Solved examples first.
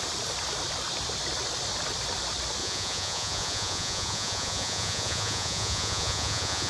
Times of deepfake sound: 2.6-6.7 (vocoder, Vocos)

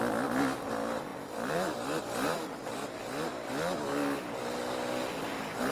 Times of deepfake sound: none

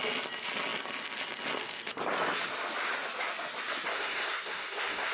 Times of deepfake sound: 3.9-5.1 (codec, SNAC)

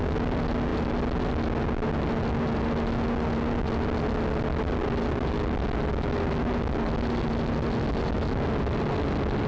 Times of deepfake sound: none

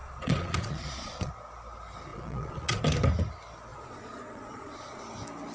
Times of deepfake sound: 0.0-1.3 (vocoder, Vocos); 2.1-2.8; 3.7-5.0

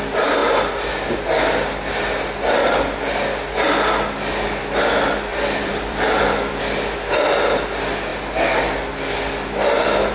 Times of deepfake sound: 5.3-6.6 (vocoder, BigVGAN v2)

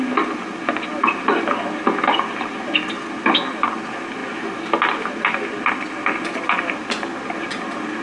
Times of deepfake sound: none

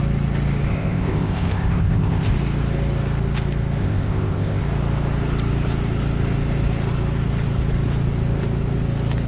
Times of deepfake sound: 0.7-2.3 (codec, ZipCodec); 3.8-4.6